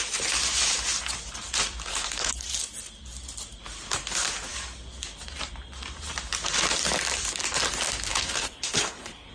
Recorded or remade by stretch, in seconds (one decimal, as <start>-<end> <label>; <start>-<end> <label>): 0.0-1.9 recorded; 1.9-2.5 remade; 2.5-8.1 recorded; 8.1-9.3 remade